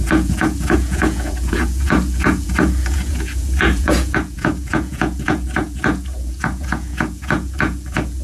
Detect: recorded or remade remade